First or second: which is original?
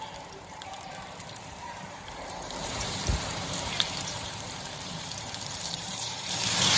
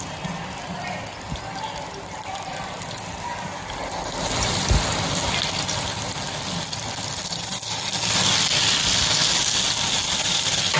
second